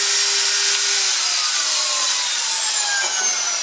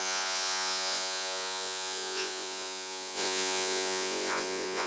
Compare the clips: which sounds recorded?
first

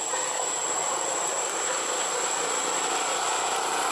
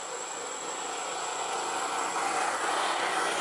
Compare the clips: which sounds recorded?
first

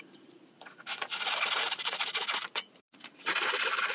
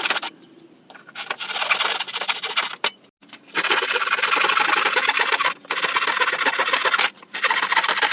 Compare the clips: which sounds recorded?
second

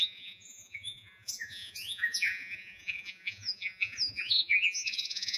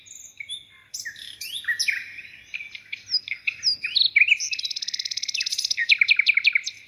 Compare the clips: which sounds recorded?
second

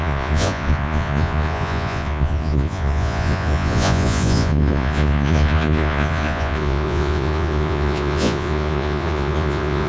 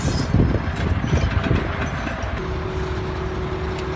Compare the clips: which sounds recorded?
second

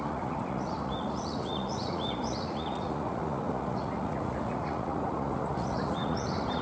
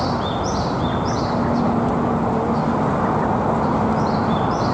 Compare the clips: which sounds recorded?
second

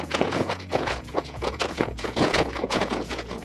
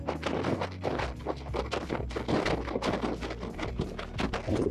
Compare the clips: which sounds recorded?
second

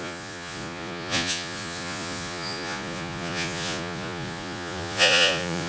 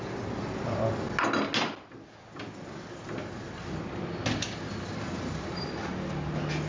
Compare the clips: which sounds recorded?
second